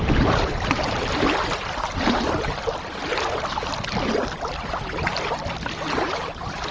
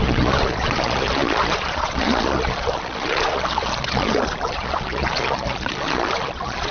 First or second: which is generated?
second